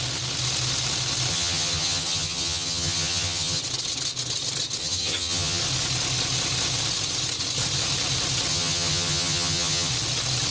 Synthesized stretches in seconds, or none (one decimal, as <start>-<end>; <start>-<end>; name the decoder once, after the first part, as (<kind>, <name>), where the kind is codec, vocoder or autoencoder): 1.3-3.6 (vocoder, HiFi-GAN); 4.8-5.6; 8.5-9.9